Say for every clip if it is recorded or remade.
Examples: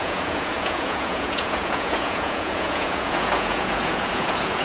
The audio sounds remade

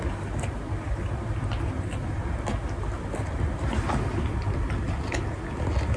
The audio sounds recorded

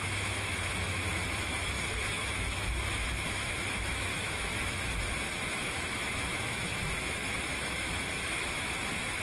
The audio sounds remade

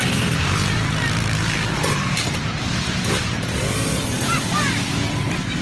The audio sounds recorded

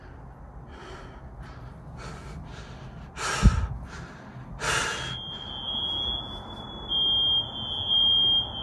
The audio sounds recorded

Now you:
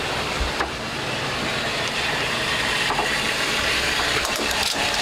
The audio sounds remade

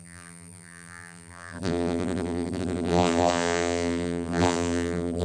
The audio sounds remade